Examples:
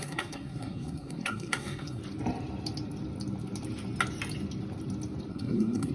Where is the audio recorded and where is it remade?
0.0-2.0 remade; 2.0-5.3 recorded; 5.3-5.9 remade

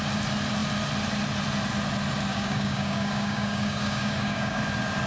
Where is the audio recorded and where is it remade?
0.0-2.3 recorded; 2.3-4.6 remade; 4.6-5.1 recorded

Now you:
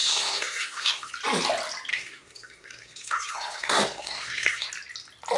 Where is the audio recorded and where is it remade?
0.0-1.1 remade; 1.1-1.9 recorded; 1.9-4.7 remade; 4.7-5.4 recorded

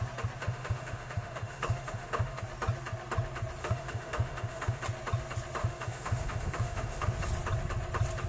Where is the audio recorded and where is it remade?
0.0-0.4 recorded; 0.4-2.4 remade; 2.4-3.6 recorded; 3.6-4.8 remade; 4.8-5.6 recorded; 5.6-7.2 remade; 7.2-8.3 recorded

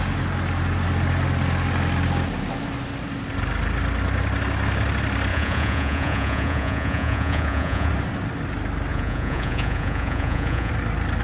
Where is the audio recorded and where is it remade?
0.0-5.3 recorded; 5.3-7.9 remade; 7.9-8.9 recorded; 8.9-10.7 remade; 10.7-11.2 recorded